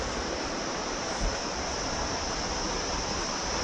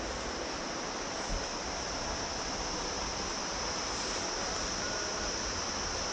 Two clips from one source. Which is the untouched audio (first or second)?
second